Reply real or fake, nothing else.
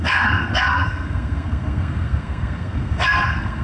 fake